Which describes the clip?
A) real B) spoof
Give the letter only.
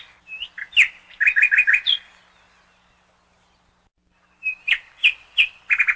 A